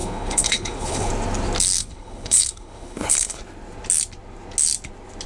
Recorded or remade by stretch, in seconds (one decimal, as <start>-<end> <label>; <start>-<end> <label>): 0.0-1.1 remade; 1.1-1.8 recorded; 1.8-3.4 remade; 3.4-5.3 recorded